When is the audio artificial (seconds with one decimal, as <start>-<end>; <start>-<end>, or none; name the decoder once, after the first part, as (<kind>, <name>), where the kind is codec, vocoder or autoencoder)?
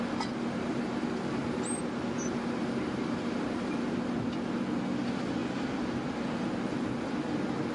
none